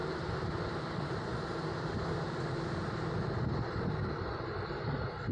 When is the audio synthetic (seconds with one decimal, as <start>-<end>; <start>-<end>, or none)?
none